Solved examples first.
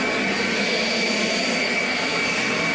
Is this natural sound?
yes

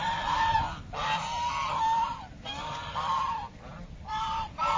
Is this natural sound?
no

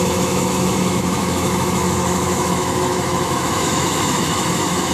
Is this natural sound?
no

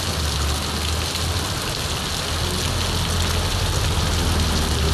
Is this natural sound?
yes